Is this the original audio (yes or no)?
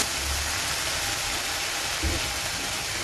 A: yes